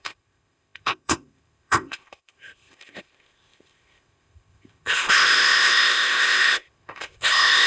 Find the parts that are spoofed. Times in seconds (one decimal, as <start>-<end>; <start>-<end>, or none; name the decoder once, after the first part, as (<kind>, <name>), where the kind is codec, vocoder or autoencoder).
0.0-7.7 (codec, ZipCodec)